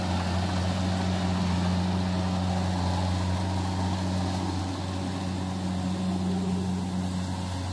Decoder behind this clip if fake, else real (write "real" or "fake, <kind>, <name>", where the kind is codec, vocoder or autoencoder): real